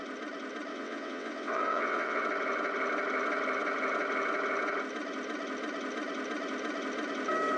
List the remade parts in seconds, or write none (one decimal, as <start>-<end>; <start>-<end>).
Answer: 0.7-2.2